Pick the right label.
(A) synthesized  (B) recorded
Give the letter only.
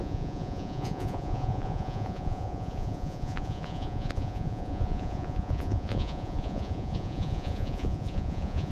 A